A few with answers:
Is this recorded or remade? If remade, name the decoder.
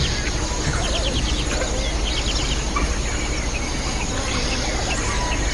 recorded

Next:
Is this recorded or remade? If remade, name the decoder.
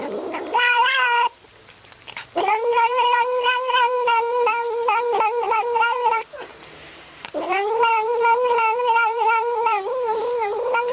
remade, vocoder, BigVGAN v2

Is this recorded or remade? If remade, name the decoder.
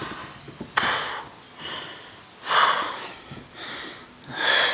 recorded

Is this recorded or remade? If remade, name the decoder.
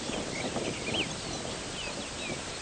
recorded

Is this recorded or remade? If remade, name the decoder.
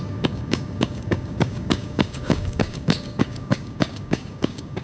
remade, codec, DAC